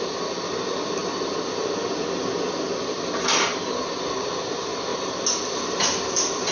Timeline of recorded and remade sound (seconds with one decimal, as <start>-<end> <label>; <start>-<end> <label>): 0.0-4.9 recorded; 4.9-6.5 remade